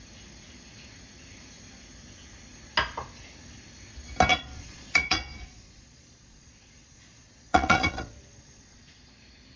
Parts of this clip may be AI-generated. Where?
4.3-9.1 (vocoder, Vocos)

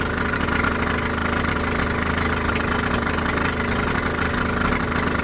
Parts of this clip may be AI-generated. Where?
none